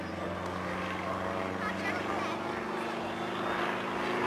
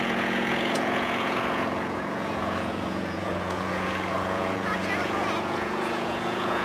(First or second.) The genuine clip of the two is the first